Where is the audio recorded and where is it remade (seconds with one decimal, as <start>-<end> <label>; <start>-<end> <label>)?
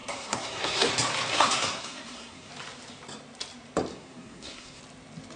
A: 0.0-0.9 remade; 0.9-1.3 recorded; 1.3-2.5 remade; 2.5-3.9 recorded; 3.9-4.8 remade; 4.8-5.4 recorded